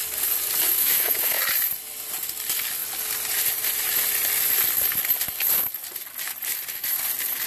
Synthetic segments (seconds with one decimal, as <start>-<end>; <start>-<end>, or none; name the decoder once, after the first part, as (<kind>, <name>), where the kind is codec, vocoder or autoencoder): 0.8-1.4 (autoencoder, DAC-VAE)